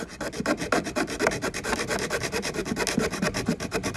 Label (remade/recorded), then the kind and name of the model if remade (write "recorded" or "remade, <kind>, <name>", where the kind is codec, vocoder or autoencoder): recorded